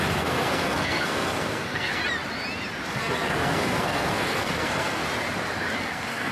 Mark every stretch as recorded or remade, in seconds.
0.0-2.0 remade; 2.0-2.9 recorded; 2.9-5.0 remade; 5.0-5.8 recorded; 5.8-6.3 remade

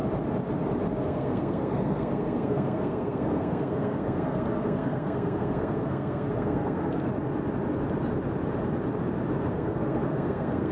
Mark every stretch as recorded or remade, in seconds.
0.0-1.0 recorded; 1.0-7.1 remade; 7.1-9.5 recorded; 9.5-10.7 remade

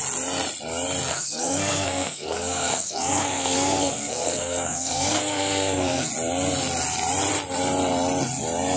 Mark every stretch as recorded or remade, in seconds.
0.0-1.1 recorded; 1.1-6.1 remade; 6.1-8.8 recorded

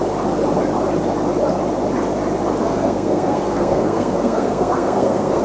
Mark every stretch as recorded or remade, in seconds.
0.0-2.6 recorded; 2.6-5.4 remade